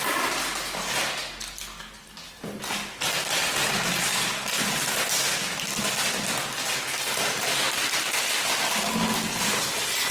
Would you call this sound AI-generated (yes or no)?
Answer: no